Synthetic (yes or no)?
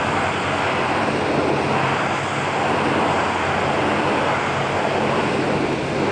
no